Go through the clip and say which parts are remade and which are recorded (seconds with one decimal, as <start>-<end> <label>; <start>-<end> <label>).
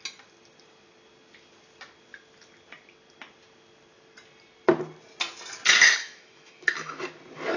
0.0-6.0 recorded; 6.0-7.0 remade; 7.0-7.6 recorded